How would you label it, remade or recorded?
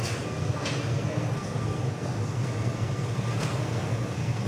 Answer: remade